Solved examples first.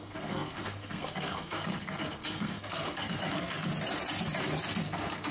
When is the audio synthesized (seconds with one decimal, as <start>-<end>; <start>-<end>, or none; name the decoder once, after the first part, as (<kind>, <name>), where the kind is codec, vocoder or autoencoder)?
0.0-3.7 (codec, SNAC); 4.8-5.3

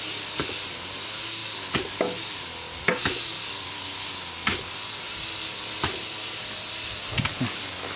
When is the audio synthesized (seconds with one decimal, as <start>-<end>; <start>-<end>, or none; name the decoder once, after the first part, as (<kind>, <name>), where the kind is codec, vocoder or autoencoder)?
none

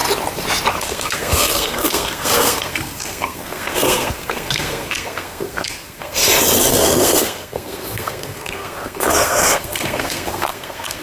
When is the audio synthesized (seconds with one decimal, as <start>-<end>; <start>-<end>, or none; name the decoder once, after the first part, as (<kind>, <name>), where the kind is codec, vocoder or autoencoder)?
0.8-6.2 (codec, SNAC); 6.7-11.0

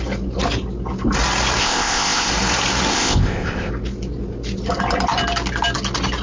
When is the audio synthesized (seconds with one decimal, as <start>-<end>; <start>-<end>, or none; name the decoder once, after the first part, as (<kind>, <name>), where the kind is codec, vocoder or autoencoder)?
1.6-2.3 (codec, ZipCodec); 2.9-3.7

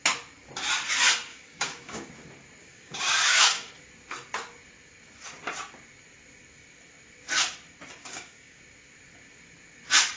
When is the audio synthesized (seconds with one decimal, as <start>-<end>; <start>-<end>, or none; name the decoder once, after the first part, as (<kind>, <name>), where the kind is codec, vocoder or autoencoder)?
1.3-2.1 (codec, DAC); 2.6-3.7; 8.0-8.6

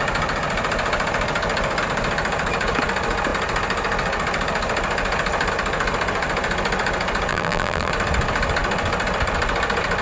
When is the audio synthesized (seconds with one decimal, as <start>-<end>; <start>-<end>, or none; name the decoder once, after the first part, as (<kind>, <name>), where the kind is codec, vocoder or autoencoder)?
7.3-7.9 (vocoder, BigVGAN v2)